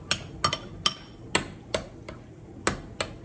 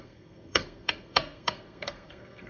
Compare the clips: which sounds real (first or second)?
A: first